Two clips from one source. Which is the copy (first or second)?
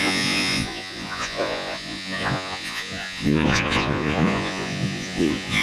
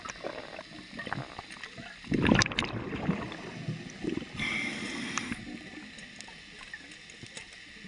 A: first